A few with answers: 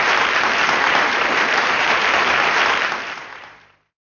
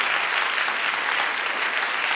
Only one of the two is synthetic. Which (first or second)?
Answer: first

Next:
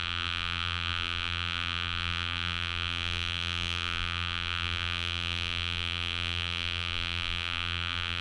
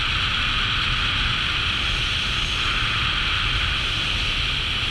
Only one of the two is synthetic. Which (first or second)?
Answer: first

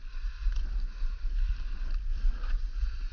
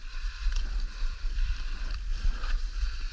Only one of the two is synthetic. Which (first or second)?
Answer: second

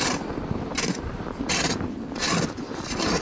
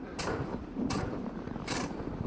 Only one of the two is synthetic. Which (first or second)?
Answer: second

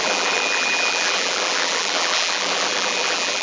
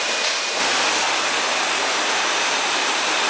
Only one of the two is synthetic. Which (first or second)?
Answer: first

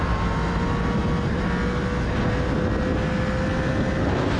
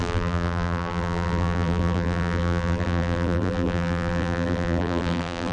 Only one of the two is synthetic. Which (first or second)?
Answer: second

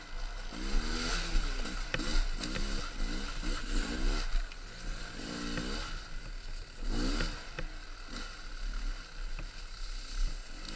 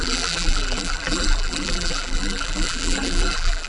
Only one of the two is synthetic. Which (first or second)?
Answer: second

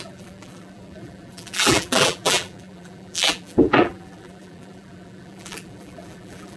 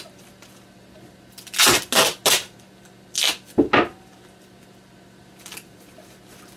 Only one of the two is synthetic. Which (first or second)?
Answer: first